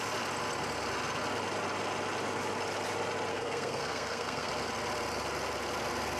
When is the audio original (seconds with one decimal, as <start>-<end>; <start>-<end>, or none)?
0.0-3.3; 4.5-6.2

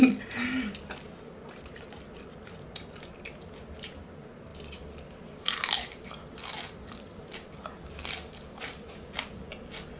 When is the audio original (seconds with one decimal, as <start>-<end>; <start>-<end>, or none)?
0.0-10.0